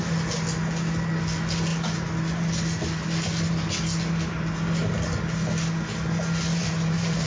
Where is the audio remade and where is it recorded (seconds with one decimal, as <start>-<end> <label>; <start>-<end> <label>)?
0.0-6.5 recorded; 6.5-7.3 remade